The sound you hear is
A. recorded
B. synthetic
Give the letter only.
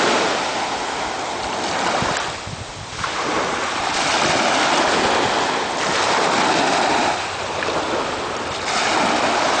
A